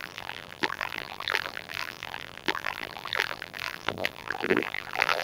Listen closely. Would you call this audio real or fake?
fake